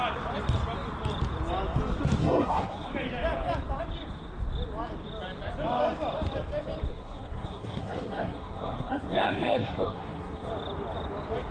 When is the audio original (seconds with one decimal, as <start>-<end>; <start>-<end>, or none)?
0.0-2.2; 2.9-6.9; 10.5-11.5